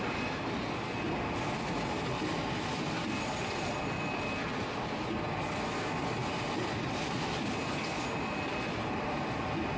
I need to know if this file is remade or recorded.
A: recorded